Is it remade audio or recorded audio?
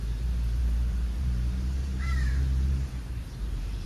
remade